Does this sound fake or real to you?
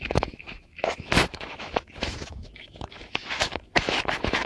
fake